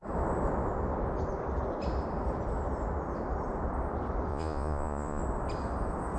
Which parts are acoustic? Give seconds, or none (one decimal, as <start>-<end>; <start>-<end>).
0.0-4.3; 5.2-6.2